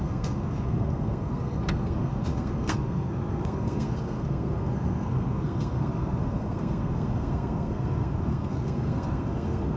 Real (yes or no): no